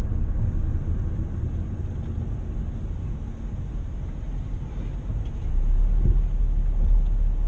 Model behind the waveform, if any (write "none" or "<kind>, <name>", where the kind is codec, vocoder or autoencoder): none